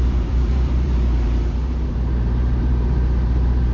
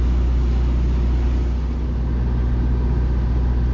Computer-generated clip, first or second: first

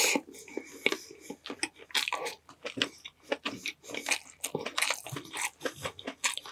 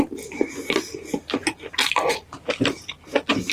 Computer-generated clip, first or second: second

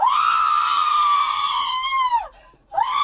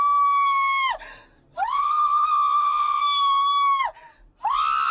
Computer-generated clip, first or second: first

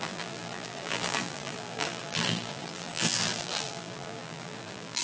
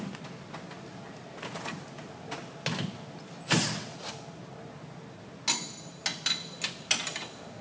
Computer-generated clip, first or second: first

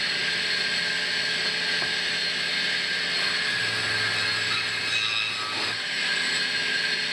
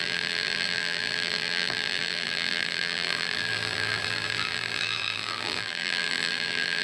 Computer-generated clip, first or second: second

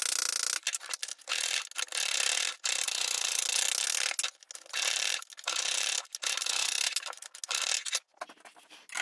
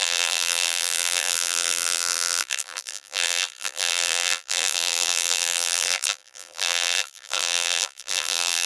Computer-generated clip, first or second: second